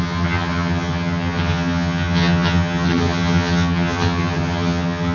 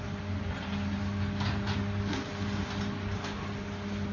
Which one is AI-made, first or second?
first